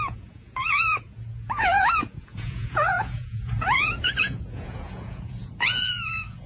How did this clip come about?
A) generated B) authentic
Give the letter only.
A